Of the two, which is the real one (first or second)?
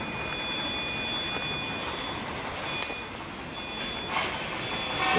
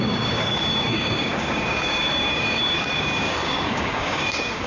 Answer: first